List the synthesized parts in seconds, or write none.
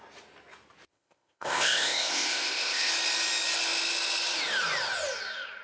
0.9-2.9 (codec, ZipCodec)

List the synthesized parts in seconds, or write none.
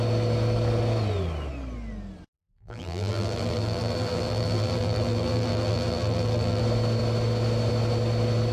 2.4-6.6 (vocoder, BigVGAN v2)